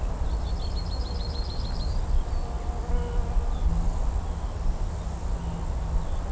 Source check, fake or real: real